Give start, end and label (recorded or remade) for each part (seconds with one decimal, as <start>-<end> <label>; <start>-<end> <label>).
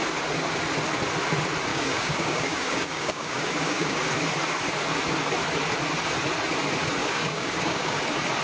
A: 0.0-1.7 recorded; 1.7-4.0 remade; 4.0-7.0 recorded; 7.0-8.0 remade; 8.0-8.4 recorded